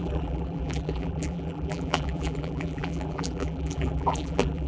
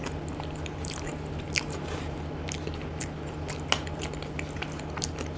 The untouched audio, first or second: second